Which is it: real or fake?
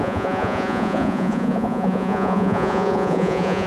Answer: fake